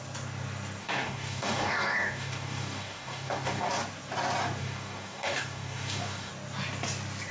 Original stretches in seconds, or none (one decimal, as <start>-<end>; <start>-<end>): 0.0-0.8; 3.7-4.6; 6.3-7.3